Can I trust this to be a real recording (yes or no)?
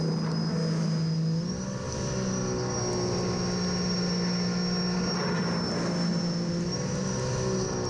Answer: yes